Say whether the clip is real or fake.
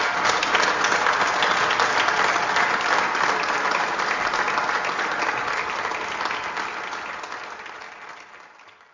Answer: fake